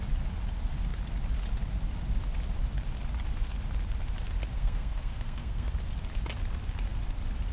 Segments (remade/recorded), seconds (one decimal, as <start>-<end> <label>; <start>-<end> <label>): 0.0-4.5 recorded; 4.5-5.7 remade; 5.7-7.5 recorded